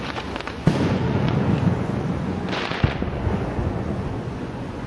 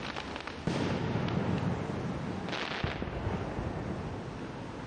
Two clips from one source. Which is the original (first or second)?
second